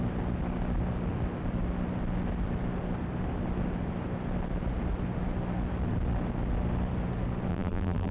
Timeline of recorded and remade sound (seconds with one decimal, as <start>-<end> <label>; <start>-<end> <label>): 0.0-7.5 recorded; 7.5-8.1 remade